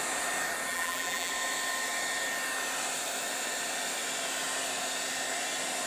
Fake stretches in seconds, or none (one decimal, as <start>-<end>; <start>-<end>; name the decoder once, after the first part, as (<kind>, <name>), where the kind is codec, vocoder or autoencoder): 0.7-1.3 (vocoder, BigVGAN v2)